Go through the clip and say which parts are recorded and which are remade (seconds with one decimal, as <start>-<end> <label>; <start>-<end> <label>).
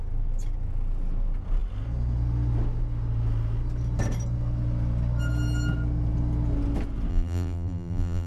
0.0-7.1 recorded; 7.1-8.3 remade